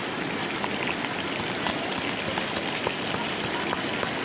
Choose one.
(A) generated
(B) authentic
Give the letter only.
B